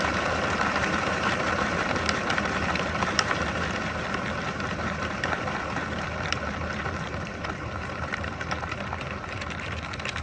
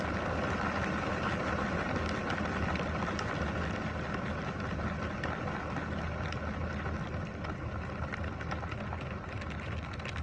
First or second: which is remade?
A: first